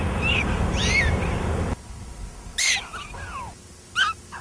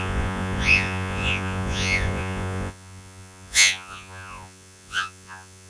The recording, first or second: first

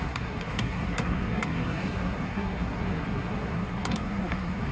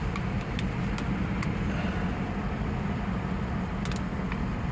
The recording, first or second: second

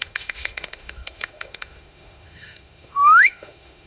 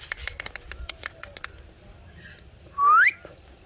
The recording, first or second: second